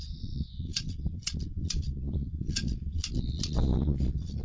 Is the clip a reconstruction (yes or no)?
yes